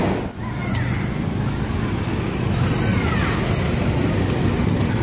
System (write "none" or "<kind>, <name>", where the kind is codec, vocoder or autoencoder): none